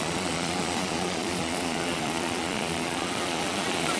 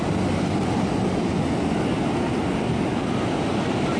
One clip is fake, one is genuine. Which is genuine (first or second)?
second